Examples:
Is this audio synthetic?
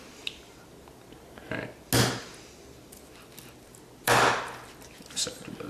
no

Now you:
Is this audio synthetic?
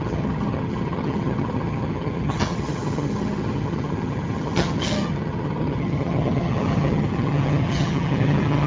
yes